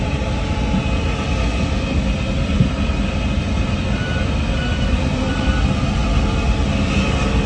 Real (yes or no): yes